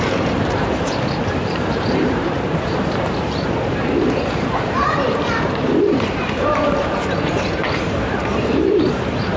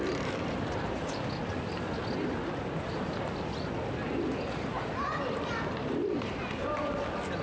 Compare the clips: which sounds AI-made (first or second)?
first